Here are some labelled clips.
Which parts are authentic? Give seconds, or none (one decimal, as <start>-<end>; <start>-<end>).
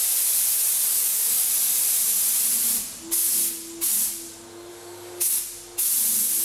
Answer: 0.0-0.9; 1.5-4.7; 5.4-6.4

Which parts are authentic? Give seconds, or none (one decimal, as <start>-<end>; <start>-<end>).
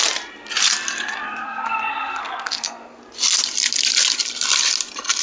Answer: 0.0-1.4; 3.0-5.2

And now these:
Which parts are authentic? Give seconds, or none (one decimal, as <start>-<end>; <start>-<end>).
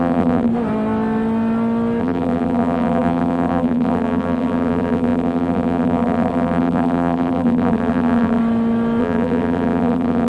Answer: 0.5-2.0; 8.4-9.0